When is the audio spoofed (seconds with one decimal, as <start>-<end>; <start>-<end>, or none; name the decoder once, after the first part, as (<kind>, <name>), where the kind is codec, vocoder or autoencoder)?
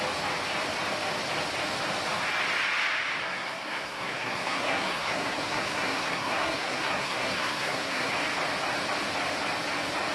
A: 3.2-8.1 (codec, SNAC)